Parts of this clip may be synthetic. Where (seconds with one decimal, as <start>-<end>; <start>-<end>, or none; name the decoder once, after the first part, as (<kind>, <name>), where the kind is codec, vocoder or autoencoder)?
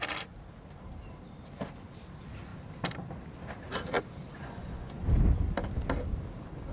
4.4-5.1 (vocoder, Vocos)